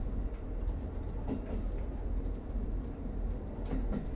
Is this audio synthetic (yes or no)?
no